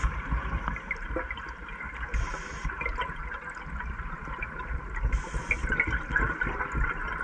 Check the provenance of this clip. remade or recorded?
recorded